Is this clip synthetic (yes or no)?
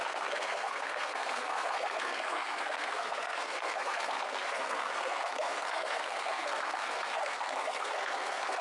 yes